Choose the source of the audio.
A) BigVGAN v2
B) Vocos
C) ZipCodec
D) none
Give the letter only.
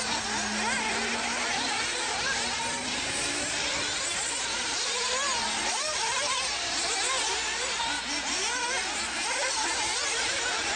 A